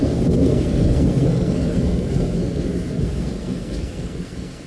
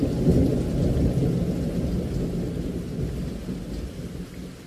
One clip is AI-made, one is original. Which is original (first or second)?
second